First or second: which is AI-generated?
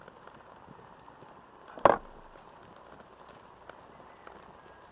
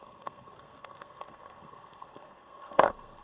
second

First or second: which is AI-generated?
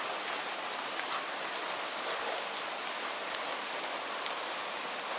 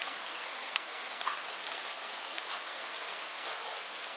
second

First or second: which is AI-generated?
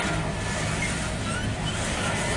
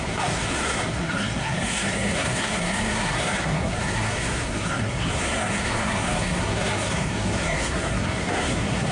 second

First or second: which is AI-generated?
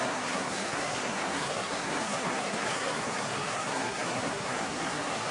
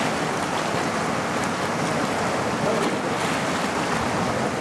first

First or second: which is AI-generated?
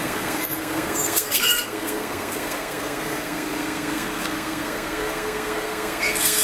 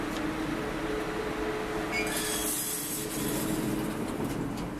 first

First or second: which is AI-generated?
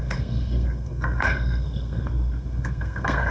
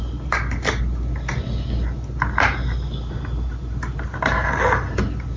first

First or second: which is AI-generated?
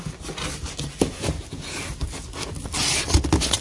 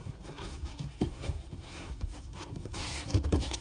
second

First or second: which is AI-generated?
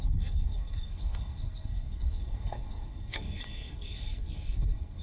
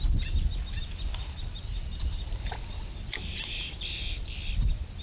first